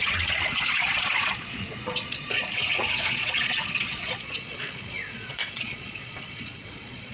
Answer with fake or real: fake